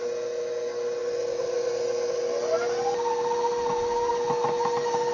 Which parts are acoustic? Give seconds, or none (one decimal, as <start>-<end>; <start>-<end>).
0.0-5.1

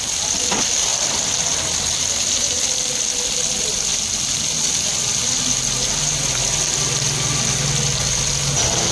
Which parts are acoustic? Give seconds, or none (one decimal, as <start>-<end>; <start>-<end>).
0.0-0.9; 1.4-8.9

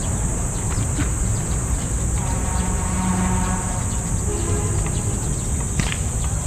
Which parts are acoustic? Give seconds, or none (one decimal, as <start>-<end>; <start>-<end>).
0.7-6.5

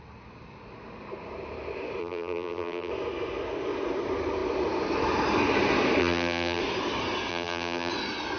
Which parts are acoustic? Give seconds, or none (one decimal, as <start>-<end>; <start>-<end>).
0.0-2.0; 2.9-6.0; 6.6-7.3; 7.9-8.4

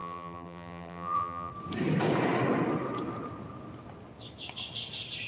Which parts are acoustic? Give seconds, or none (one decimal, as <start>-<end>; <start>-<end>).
1.5-5.3

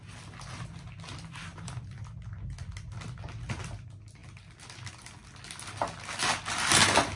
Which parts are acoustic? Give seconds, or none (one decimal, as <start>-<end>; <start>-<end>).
0.0-1.5; 2.0-7.2